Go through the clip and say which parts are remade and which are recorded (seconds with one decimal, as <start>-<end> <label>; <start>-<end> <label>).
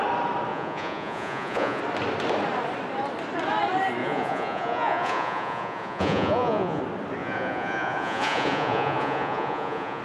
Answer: 0.0-0.5 recorded; 0.5-1.8 remade; 1.8-4.0 recorded; 4.0-6.8 remade; 6.8-7.2 recorded; 7.2-10.0 remade